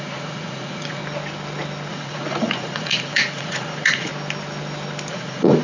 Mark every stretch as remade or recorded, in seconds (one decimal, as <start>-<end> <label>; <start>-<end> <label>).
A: 0.0-1.0 remade; 1.0-1.9 recorded; 1.9-4.1 remade; 4.1-5.1 recorded; 5.1-5.6 remade